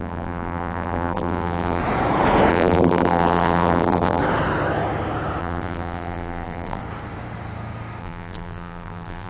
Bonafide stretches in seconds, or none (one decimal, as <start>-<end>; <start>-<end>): 1.8-2.5; 4.2-5.4; 6.8-8.0